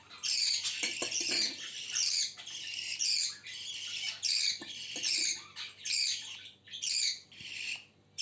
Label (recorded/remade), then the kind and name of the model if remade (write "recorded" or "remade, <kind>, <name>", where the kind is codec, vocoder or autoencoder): recorded